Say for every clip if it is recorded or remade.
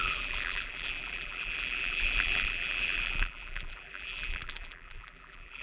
remade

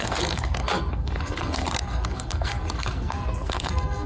remade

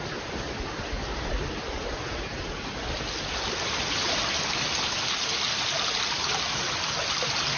recorded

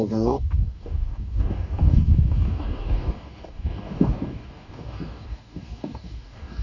remade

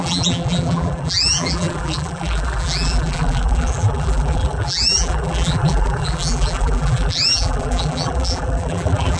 remade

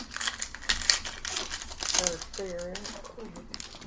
recorded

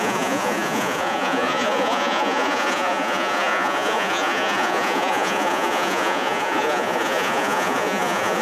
remade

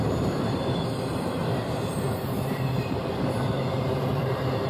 remade